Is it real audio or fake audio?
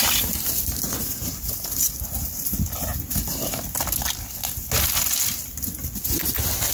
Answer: real